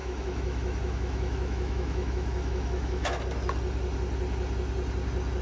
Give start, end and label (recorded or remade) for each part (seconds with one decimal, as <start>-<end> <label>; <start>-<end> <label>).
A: 0.0-3.2 remade; 3.2-5.4 recorded